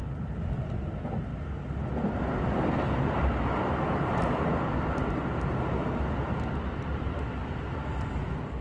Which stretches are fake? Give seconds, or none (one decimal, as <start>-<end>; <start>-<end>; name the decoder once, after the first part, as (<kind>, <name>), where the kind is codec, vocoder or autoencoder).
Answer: 0.0-0.6 (vocoder, BigVGAN v2); 1.3-5.1; 5.8-8.1